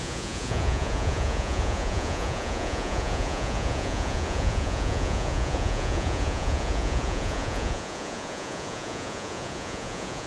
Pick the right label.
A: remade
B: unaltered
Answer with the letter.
A